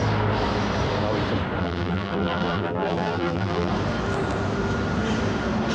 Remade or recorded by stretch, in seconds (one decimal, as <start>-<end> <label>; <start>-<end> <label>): 0.0-1.6 recorded; 1.6-3.7 remade; 3.7-5.7 recorded